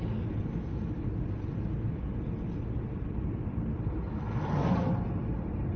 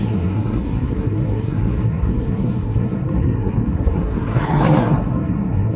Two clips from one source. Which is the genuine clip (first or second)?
first